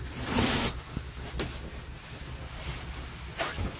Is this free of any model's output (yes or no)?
yes